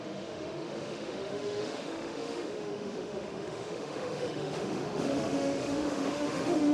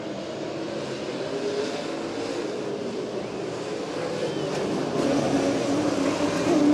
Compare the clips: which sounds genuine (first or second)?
second